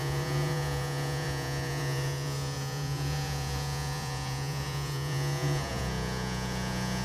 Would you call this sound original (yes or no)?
no